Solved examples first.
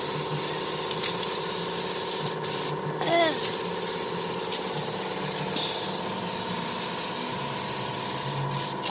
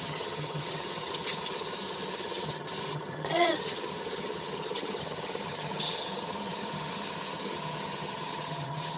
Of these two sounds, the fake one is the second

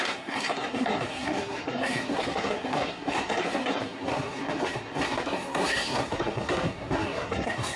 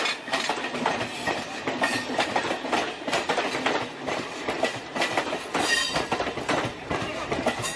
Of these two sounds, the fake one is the first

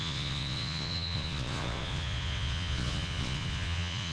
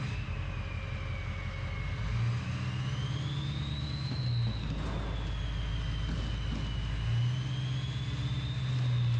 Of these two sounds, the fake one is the first